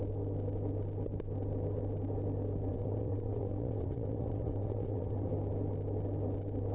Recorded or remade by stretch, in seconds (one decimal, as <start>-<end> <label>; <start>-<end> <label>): 0.0-2.7 recorded; 2.7-5.3 remade; 5.3-6.7 recorded